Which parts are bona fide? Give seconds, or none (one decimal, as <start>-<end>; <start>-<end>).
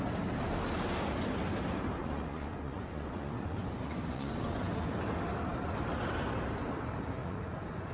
0.0-2.0; 4.3-7.2